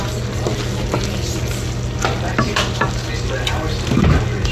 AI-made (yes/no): no